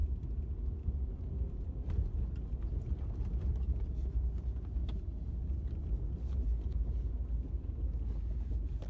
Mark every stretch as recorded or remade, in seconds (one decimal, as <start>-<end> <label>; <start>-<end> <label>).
0.0-8.9 recorded